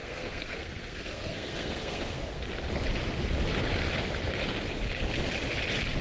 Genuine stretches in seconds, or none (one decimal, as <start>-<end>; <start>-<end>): 2.4-6.0